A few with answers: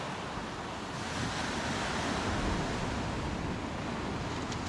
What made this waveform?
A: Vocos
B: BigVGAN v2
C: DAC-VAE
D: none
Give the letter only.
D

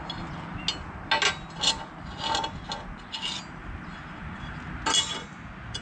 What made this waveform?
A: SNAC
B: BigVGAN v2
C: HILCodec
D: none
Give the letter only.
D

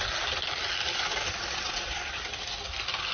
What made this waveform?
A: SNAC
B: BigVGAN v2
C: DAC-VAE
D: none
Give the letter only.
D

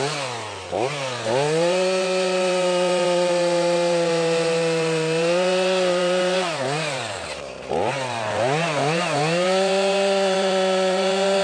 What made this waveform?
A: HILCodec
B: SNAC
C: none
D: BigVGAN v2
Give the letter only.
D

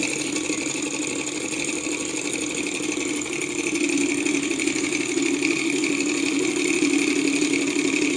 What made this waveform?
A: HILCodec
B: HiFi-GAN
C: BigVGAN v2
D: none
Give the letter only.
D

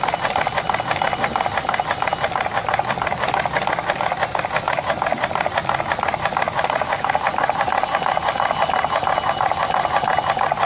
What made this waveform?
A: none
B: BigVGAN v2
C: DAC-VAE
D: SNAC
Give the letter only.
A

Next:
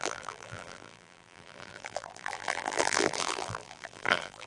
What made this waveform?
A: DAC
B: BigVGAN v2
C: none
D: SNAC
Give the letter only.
B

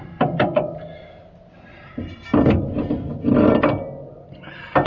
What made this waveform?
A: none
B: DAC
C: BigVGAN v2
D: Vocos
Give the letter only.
A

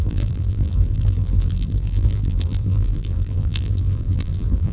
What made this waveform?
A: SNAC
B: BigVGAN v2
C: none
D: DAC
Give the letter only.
B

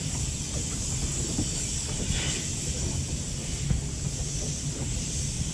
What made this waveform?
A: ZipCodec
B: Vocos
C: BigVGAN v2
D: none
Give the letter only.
D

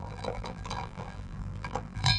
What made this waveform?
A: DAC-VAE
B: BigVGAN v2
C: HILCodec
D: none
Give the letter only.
B